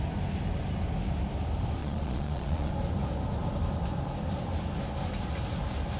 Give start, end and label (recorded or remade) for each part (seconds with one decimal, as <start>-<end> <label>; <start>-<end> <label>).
0.0-1.8 recorded; 1.8-2.7 remade; 2.7-6.0 recorded